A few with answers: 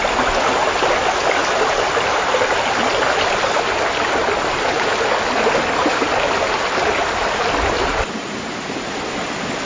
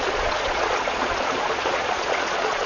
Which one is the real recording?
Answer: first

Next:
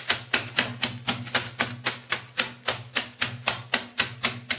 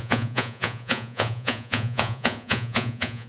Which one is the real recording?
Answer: first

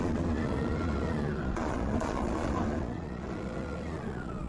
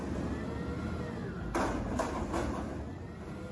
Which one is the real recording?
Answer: second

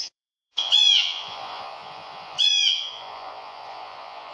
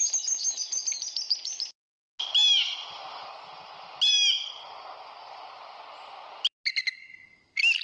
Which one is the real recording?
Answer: second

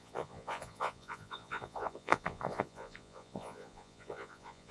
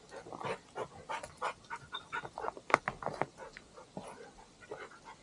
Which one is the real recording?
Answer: second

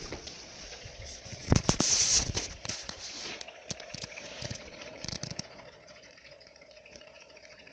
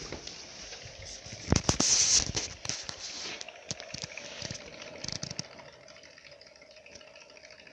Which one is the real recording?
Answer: second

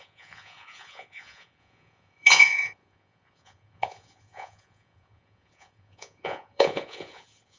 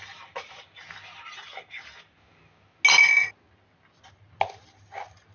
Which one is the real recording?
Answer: second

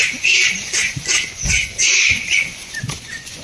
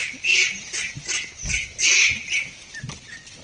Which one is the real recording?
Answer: second